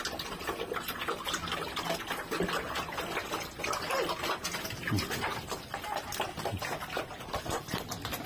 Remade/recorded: recorded